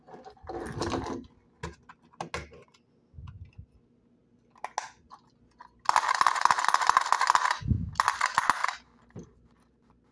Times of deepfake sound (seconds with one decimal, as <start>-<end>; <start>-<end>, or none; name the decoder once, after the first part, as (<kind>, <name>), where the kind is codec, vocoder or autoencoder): 8.6-10.1 (vocoder, BigVGAN v2)